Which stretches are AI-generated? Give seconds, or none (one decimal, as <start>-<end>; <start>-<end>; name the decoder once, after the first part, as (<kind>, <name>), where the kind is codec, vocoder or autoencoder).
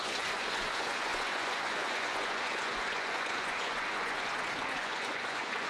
0.0-5.7 (vocoder, Vocos)